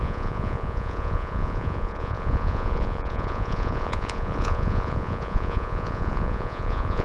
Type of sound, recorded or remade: remade